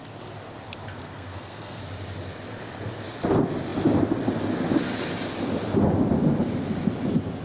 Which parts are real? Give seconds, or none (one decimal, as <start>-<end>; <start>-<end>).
0.0-1.0; 1.8-7.4